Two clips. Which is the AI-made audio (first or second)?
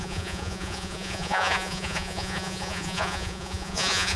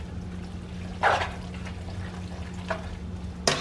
first